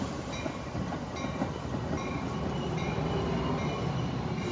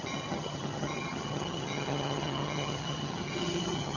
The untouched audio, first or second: first